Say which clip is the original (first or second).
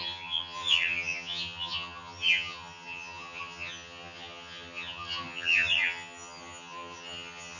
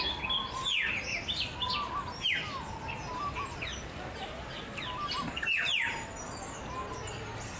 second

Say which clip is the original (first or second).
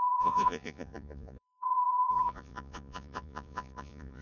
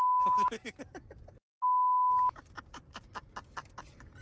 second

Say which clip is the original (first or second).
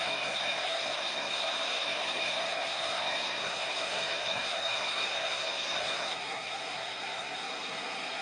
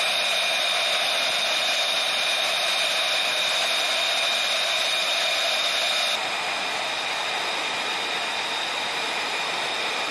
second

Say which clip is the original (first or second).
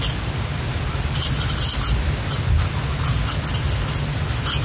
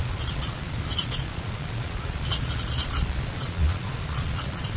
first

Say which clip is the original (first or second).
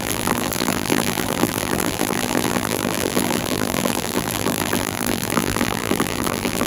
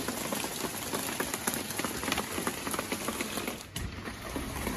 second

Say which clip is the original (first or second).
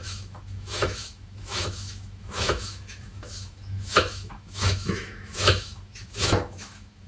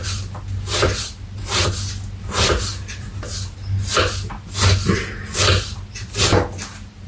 second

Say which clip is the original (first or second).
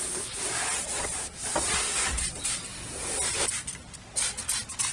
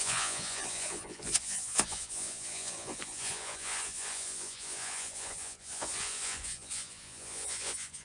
first